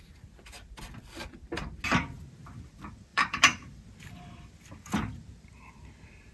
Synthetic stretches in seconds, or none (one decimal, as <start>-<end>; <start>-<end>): 3.1-3.8